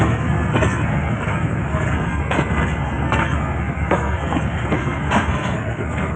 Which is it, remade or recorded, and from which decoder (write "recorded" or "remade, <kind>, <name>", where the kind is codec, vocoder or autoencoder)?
remade, codec, SNAC